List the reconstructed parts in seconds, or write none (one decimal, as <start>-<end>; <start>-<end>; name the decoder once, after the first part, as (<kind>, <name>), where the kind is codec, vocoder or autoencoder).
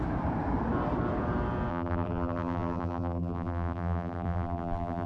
1.7-5.1 (vocoder, BigVGAN v2)